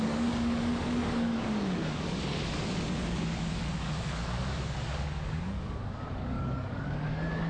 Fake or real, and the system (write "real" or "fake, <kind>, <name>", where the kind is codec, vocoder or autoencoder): fake, codec, DAC